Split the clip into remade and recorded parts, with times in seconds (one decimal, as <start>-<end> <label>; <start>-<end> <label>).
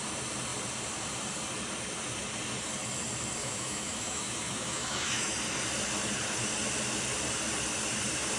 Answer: 0.0-3.4 recorded; 3.4-5.3 remade; 5.3-8.4 recorded